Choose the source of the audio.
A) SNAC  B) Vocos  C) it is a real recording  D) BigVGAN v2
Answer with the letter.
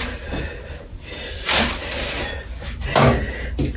C